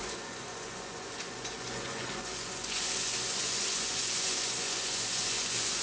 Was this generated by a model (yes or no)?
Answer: yes